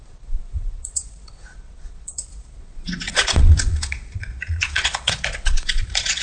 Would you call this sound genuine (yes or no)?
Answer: no